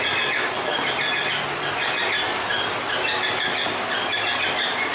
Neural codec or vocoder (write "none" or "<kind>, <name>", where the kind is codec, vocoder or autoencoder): none